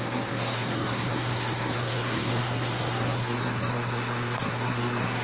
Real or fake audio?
fake